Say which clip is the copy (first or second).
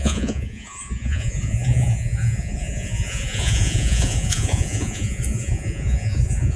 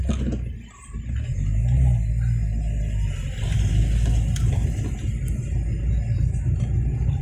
first